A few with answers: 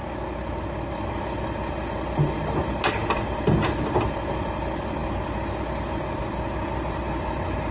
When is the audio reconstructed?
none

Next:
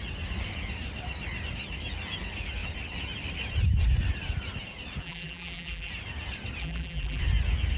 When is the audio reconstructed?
5.0-5.9 (vocoder, BigVGAN v2); 6.6-7.2

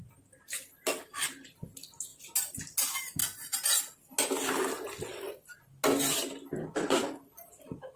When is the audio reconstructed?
none